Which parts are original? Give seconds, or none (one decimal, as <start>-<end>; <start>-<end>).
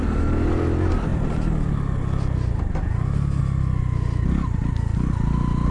0.0-5.7